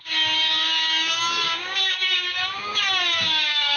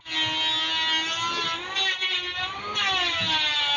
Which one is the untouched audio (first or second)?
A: second